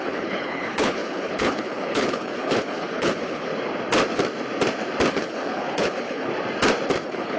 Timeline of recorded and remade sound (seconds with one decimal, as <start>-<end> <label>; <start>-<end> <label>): 0.0-3.5 remade; 3.5-5.1 recorded; 5.1-6.3 remade; 6.3-7.0 recorded; 7.0-7.4 remade